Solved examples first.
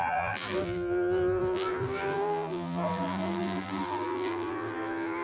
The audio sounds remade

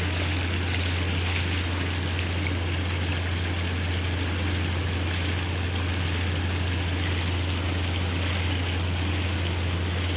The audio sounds recorded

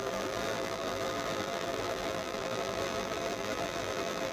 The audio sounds remade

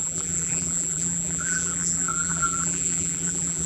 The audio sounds remade